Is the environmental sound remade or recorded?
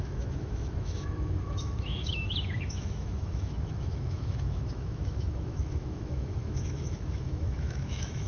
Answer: remade